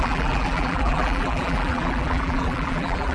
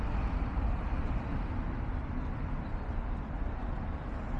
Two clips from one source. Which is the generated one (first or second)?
first